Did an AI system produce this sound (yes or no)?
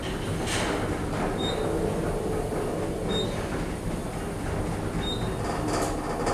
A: no